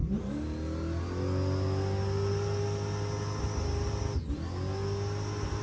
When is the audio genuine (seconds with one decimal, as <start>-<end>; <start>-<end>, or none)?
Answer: 0.0-5.6